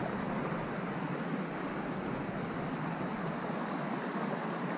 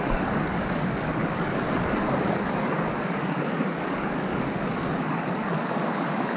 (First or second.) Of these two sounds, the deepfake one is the second